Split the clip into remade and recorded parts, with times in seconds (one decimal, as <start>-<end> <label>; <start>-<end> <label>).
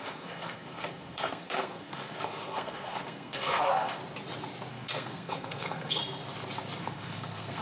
0.0-4.0 remade; 4.0-4.7 recorded; 4.7-6.0 remade; 6.0-6.8 recorded; 6.8-7.6 remade